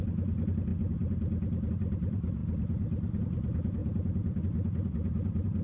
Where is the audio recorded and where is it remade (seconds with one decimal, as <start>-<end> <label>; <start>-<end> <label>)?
0.0-0.7 remade; 0.7-1.7 recorded; 1.7-2.4 remade; 2.4-3.2 recorded; 3.2-5.6 remade